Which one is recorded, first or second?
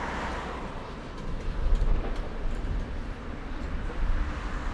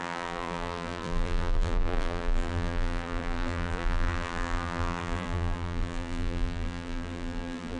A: first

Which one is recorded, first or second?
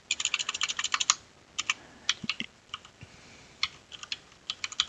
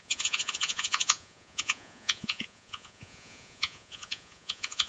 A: first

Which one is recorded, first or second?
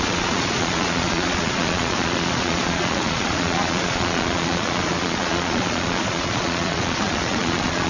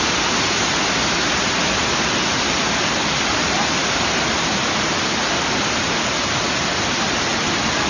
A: second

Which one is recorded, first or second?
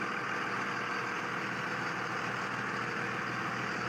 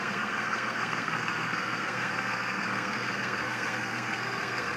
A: first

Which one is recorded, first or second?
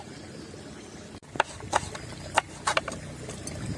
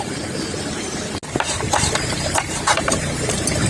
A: first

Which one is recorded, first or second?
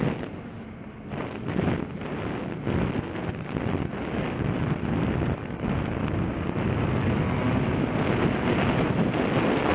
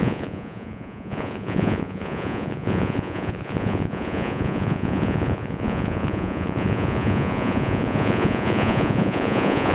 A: first